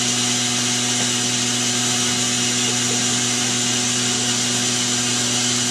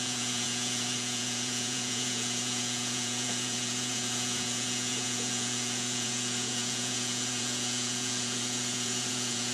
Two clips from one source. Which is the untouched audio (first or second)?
first